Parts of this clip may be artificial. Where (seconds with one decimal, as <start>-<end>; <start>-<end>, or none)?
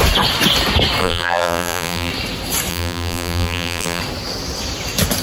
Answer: 1.0-2.1; 2.7-4.0